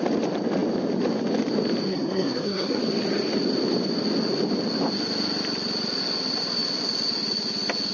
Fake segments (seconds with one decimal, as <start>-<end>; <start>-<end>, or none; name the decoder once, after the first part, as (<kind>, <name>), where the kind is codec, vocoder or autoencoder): 1.9-2.8 (codec, SNAC)